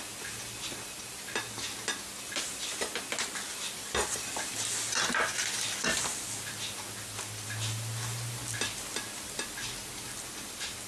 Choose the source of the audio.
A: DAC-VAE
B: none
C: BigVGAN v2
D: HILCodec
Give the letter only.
B